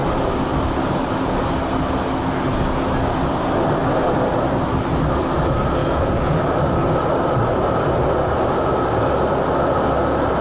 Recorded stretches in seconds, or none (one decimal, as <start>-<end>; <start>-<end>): 0.0-5.8; 6.4-10.4